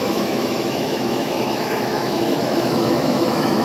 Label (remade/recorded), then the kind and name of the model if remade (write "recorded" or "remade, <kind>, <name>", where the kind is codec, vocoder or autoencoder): remade, autoencoder, DAC-VAE